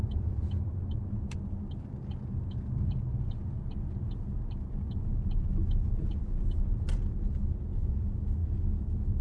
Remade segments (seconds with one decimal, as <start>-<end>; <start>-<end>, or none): none